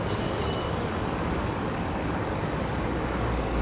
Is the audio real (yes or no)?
no